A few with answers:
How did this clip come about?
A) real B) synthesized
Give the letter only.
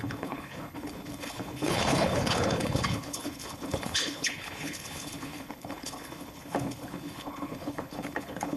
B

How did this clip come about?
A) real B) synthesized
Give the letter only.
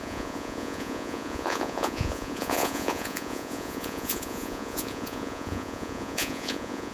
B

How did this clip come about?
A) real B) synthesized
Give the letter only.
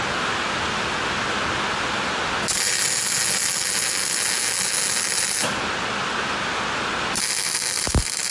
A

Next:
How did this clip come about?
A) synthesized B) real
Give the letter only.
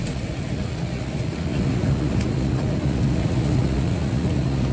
A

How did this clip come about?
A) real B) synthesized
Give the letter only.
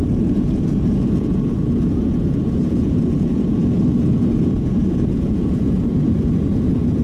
B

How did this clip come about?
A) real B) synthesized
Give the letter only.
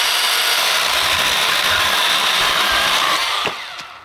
A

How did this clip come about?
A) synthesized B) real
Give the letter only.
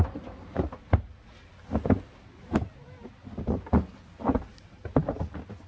B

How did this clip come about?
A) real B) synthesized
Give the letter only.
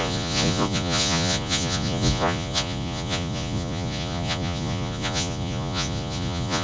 B